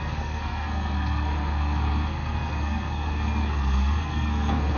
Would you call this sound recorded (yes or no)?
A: no